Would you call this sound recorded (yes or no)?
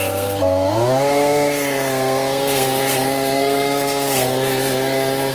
no